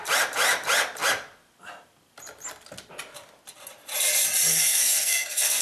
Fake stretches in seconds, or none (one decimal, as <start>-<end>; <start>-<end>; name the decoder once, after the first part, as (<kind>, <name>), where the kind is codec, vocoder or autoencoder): 4.5-5.6 (codec, SNAC)